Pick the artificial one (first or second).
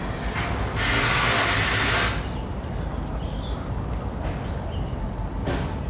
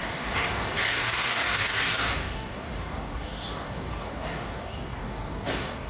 second